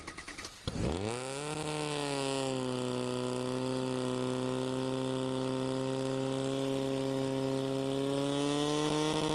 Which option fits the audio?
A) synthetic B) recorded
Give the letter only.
B